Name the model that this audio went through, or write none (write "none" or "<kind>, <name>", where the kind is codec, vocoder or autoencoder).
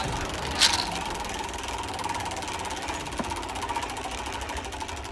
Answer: none